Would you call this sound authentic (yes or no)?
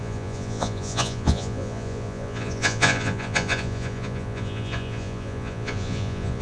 no